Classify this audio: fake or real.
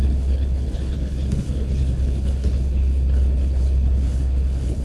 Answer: fake